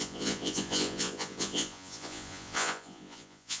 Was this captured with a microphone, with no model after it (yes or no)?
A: no